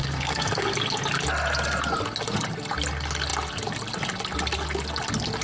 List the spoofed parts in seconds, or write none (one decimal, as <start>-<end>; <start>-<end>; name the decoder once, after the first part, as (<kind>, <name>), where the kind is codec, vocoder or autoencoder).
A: 0.0-0.6 (codec, SNAC)